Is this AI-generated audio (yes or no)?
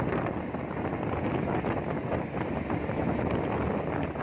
no